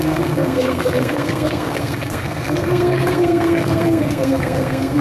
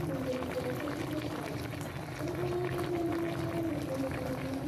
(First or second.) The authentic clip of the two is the second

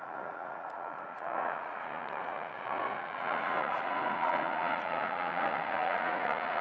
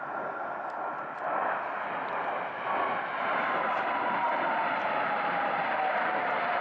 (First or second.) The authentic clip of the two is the second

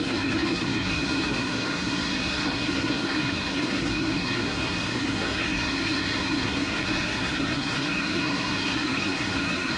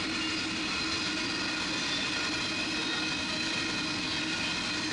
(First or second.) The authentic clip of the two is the second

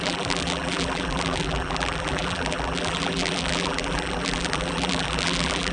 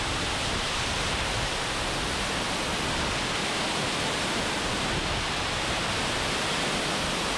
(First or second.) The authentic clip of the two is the second